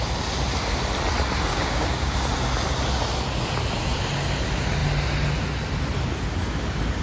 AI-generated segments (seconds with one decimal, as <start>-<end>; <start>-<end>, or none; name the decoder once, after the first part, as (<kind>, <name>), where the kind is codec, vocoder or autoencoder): 1.5-2.2 (codec, DAC)